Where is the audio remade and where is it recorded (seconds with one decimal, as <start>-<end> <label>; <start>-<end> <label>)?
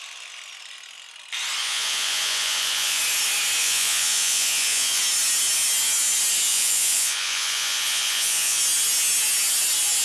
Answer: 0.0-1.6 recorded; 1.6-3.0 remade; 3.0-3.6 recorded; 3.6-5.0 remade; 5.0-6.5 recorded; 6.5-8.6 remade; 8.6-10.0 recorded